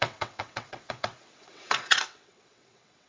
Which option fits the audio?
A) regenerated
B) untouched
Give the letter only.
A